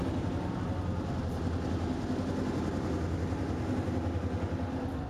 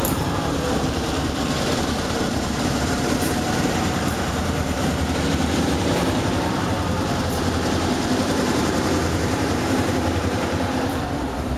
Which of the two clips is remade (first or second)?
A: second